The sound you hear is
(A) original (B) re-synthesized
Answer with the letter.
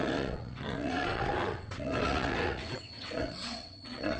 B